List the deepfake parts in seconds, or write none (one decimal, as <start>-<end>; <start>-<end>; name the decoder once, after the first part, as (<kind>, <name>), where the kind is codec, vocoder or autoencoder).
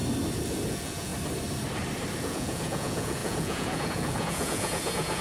0.7-1.1 (vocoder, Vocos); 2.2-5.2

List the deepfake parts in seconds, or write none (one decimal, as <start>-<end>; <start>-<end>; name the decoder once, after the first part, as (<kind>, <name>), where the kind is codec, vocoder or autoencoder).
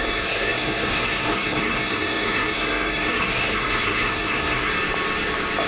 0.0-4.7 (codec, SNAC)